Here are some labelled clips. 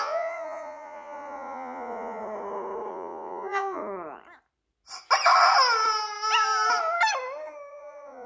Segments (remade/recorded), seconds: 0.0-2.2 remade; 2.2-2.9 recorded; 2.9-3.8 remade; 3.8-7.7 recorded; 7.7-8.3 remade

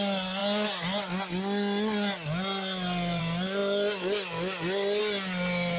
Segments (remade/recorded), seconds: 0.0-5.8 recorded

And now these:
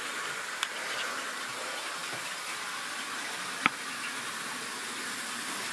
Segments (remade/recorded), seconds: 0.0-5.7 recorded

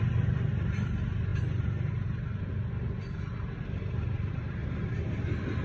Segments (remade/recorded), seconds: 0.0-5.6 recorded